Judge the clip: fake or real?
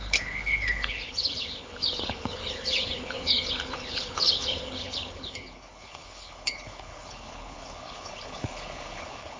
fake